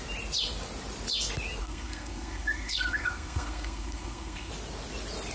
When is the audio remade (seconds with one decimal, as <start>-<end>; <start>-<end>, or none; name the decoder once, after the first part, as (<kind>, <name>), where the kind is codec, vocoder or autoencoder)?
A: 1.6-4.5 (codec, SNAC)